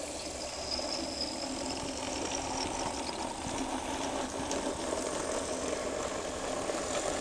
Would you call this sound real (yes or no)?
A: yes